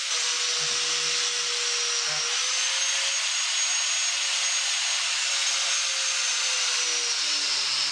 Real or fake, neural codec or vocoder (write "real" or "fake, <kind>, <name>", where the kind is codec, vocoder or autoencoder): real